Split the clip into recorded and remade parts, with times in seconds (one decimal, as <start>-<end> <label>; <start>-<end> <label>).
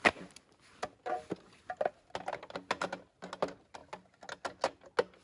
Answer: 0.0-5.2 recorded